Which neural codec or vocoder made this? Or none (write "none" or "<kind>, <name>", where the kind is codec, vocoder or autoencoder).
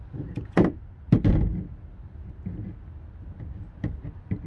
none